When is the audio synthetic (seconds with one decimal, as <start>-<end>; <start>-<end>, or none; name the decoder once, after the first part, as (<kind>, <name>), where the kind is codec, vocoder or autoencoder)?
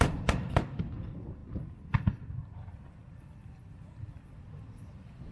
none